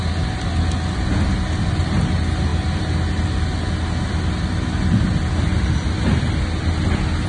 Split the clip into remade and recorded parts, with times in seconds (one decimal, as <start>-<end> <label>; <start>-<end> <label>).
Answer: 0.0-7.3 recorded